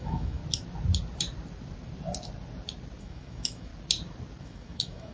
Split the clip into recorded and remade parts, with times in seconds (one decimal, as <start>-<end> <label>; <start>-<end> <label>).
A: 0.0-0.4 remade; 0.4-3.0 recorded; 3.0-3.7 remade; 3.7-4.4 recorded; 4.4-5.1 remade